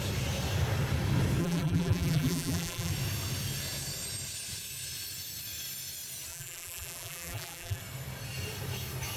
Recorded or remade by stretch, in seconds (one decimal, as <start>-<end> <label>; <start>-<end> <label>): 0.0-1.4 recorded; 1.4-2.9 remade; 2.9-6.3 recorded; 6.3-7.8 remade; 7.8-9.2 recorded